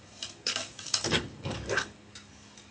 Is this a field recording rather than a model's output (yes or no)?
no